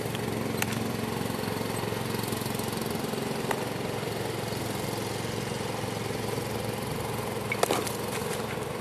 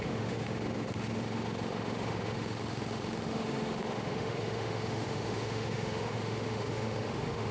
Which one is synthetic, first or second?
second